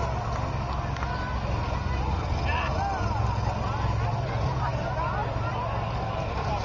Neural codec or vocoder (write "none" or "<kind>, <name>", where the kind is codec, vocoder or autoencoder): none